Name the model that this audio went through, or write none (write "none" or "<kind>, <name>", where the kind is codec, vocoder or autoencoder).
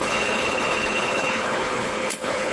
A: codec, HILCodec